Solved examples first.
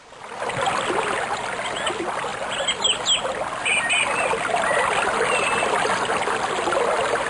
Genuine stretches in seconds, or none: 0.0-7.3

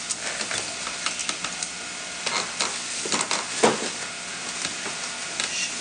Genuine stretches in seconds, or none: 0.0-5.8